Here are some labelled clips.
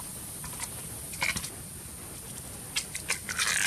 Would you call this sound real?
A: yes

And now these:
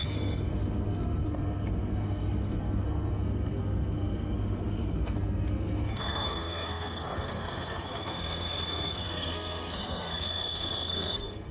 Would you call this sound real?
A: no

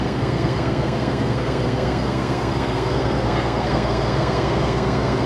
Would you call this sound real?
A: no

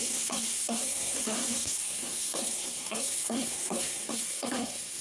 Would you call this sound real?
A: no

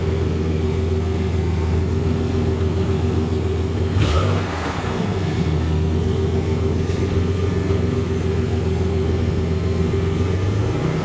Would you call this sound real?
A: no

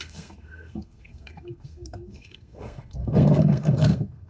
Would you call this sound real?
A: no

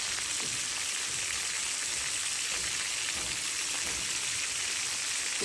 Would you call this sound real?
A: yes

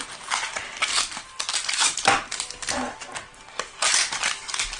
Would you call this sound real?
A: yes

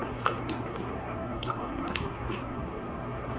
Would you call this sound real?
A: no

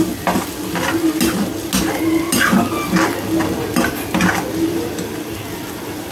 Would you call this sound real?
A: yes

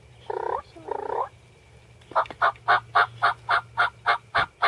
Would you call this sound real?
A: yes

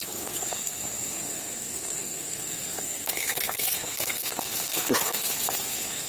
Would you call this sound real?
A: no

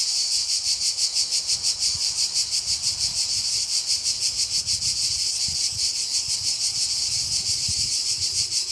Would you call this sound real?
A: yes